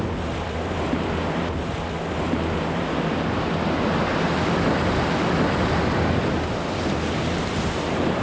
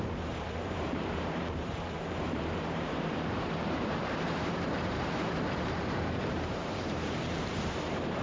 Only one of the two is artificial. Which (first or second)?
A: second